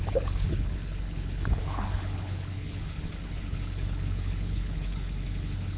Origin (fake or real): fake